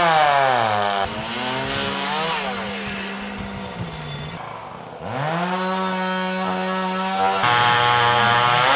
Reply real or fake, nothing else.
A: real